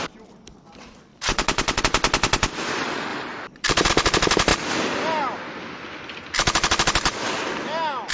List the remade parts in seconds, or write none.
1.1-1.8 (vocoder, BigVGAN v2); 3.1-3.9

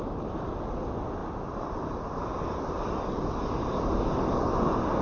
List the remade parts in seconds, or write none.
1.2-4.2 (vocoder, BigVGAN v2)

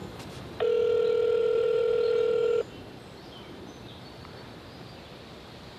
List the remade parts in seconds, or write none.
0.0-0.6 (vocoder, BigVGAN v2); 1.4-4.9

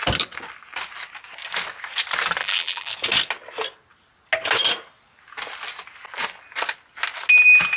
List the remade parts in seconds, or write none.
2.4-2.9 (vocoder, BigVGAN v2)